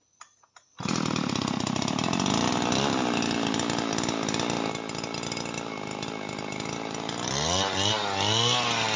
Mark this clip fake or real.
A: real